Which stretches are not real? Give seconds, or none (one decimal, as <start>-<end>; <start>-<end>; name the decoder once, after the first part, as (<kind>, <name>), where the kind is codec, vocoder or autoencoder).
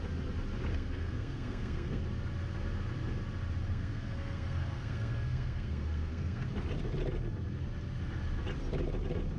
0.7-2.0 (codec, SNAC); 3.7-6.5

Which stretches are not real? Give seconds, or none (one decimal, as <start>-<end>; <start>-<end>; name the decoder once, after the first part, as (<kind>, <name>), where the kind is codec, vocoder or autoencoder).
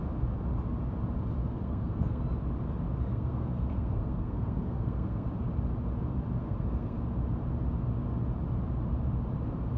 1.4-2.2 (codec, SNAC); 3.1-5.3; 6.4-7.0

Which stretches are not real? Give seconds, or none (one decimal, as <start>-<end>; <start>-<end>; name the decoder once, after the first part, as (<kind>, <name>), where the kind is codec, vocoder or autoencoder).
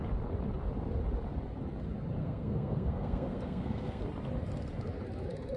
2.2-4.0 (codec, SNAC)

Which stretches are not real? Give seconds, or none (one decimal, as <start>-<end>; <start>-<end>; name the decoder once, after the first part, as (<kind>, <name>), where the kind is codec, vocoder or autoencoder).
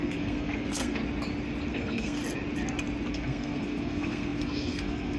0.0-1.0 (codec, SNAC); 1.7-2.2; 3.1-5.2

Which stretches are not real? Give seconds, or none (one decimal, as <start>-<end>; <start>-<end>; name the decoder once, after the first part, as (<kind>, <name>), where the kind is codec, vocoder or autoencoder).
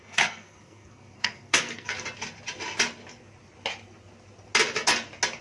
0.0-1.9 (codec, SNAC)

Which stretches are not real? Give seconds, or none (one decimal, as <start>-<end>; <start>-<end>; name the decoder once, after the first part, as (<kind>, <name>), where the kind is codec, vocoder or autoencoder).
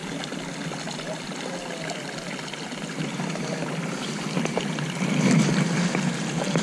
none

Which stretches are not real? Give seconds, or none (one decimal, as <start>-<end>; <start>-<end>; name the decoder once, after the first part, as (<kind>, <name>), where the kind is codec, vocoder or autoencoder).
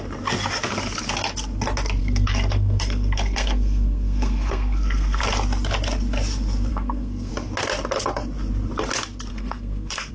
2.0-5.2 (codec, SNAC); 6.7-7.3; 9.3-10.1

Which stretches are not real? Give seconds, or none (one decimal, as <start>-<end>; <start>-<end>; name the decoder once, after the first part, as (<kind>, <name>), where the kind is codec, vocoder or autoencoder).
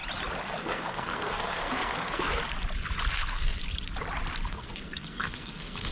0.5-2.4 (codec, SNAC); 3.1-3.6; 4.5-5.9